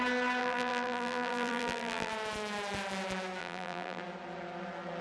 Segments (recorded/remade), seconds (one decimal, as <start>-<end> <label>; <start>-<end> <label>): 0.0-0.4 recorded; 0.4-2.1 remade; 2.1-3.4 recorded; 3.4-4.0 remade; 4.0-5.0 recorded